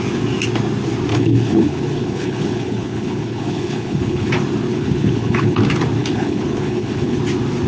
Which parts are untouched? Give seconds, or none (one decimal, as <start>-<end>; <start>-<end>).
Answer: 0.0-1.1; 4.3-4.7; 5.6-6.0; 7.2-7.7